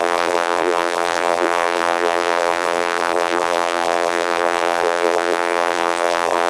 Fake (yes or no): yes